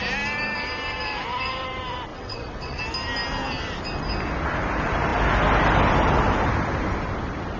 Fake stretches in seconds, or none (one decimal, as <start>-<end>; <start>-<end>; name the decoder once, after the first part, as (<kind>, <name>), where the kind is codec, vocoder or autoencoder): 2.1-2.8 (vocoder, WaveNeXt)